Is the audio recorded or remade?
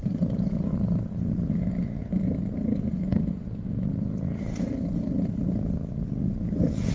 recorded